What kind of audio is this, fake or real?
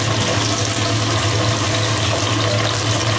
real